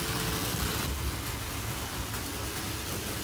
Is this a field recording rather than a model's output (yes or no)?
yes